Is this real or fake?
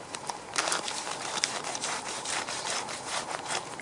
fake